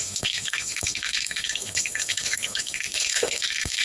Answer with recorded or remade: remade